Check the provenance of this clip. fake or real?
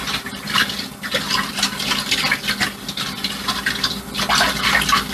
real